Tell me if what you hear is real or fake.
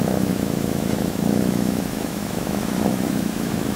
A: fake